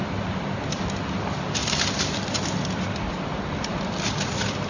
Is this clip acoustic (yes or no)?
yes